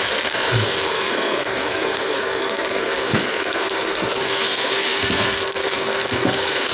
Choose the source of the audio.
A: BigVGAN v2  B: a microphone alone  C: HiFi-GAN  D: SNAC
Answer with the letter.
D